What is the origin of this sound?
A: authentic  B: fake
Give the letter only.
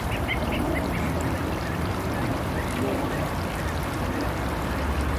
B